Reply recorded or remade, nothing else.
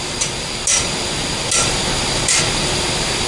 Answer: recorded